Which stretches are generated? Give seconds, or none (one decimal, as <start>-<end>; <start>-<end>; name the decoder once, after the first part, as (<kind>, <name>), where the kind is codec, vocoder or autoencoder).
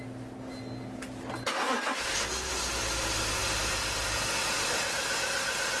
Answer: none